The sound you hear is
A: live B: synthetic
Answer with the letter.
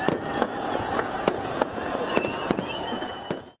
B